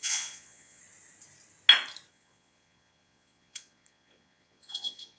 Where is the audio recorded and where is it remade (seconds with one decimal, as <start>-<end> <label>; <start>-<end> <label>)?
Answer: 0.0-0.8 remade; 0.8-2.1 recorded; 2.1-5.2 remade